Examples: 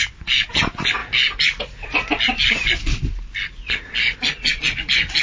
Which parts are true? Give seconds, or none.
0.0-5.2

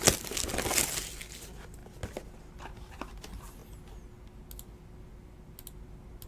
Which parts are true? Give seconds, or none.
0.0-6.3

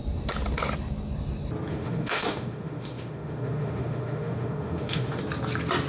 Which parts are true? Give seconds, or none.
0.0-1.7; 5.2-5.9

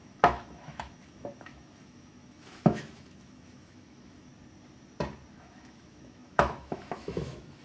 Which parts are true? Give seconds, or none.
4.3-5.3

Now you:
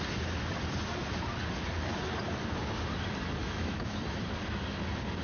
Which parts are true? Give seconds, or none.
0.0-3.4; 4.0-5.2